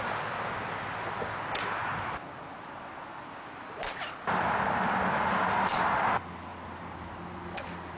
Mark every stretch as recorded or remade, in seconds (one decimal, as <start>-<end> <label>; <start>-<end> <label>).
0.0-8.0 recorded

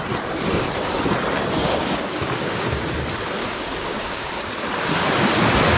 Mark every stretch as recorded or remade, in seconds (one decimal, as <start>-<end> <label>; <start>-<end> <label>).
0.0-1.6 recorded; 1.6-2.9 remade; 2.9-3.4 recorded; 3.4-4.3 remade; 4.3-5.8 recorded

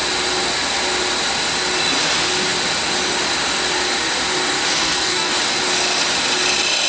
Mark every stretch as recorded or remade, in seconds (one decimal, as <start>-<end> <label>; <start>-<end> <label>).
0.0-4.8 recorded; 4.8-5.3 remade; 5.3-6.9 recorded

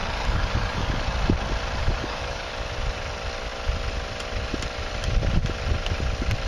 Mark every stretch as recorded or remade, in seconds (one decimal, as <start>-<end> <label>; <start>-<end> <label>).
0.0-1.0 remade; 1.0-1.8 recorded; 1.8-2.5 remade; 2.5-6.5 recorded